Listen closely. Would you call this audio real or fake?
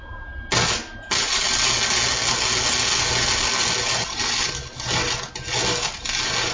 real